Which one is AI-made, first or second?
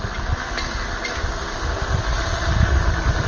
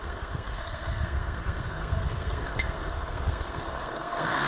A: second